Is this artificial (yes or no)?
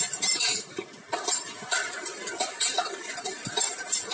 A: yes